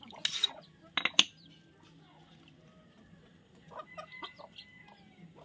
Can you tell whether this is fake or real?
real